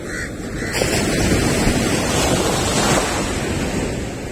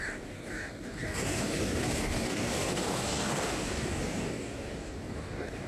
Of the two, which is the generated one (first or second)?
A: second